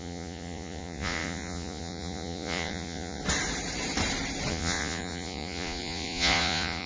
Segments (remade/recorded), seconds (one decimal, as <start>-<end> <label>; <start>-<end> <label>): 0.0-3.2 remade; 3.2-4.5 recorded; 4.5-6.9 remade